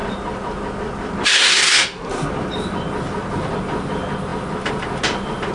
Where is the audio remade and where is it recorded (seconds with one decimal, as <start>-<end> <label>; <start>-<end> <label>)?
0.0-1.3 recorded; 1.3-2.3 remade; 2.3-5.5 recorded